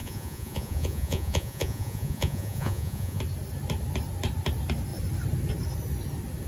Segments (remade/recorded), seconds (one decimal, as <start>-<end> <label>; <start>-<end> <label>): 0.0-3.2 remade; 3.2-6.5 recorded

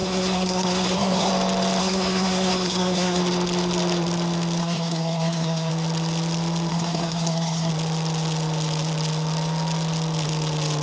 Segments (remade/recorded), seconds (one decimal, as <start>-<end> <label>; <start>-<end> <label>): 0.0-1.3 remade; 1.3-1.8 recorded; 1.8-3.2 remade; 3.2-4.6 recorded; 4.6-5.7 remade; 5.7-6.7 recorded; 6.7-7.7 remade; 7.7-10.8 recorded